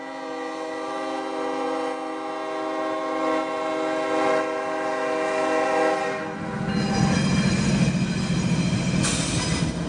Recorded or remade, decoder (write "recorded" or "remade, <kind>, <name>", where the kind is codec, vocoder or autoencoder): recorded